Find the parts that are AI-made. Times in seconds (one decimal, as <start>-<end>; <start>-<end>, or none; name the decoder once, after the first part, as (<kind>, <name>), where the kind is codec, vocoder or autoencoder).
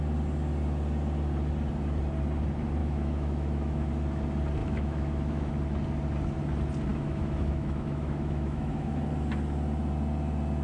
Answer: 2.8-3.9 (autoencoder, DAC-VAE); 4.6-5.5; 6.9-9.0